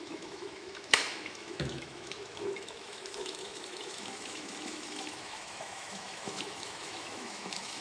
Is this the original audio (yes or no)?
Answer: no